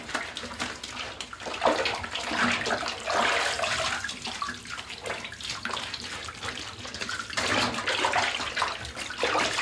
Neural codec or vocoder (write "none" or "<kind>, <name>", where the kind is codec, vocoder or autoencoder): none